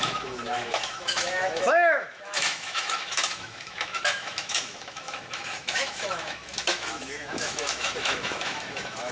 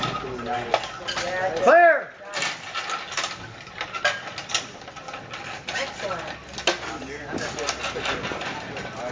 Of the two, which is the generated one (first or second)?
first